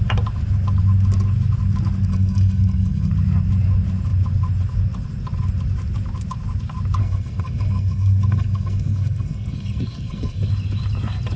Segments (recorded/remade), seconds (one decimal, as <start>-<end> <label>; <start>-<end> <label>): 0.0-2.1 recorded; 2.1-3.1 remade; 3.1-7.0 recorded; 7.0-10.5 remade; 10.5-11.4 recorded